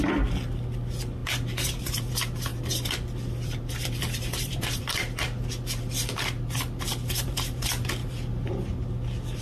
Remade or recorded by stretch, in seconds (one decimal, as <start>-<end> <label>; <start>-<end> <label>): 0.0-1.2 recorded; 1.2-2.1 remade; 2.1-2.5 recorded; 2.5-7.6 remade; 7.6-8.0 recorded; 8.0-9.4 remade